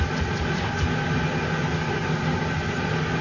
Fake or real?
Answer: real